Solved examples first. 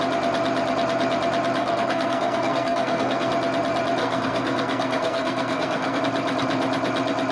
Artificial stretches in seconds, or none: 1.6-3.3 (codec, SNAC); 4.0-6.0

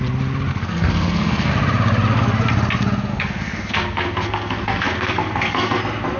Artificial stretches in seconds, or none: 0.5-1.5 (codec, SNAC); 3.1-5.8

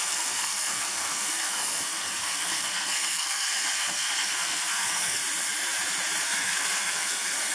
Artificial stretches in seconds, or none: 0.0-5.2 (codec, SNAC); 6.2-7.5